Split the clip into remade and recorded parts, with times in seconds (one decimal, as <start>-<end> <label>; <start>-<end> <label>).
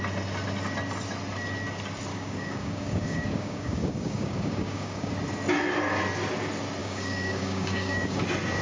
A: 0.0-2.1 recorded; 2.1-5.1 remade; 5.1-6.8 recorded; 6.8-8.2 remade; 8.2-8.6 recorded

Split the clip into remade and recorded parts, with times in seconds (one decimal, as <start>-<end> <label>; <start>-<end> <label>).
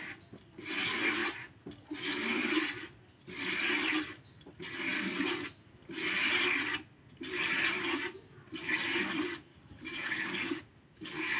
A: 0.0-9.5 recorded; 9.5-10.6 remade; 10.6-11.4 recorded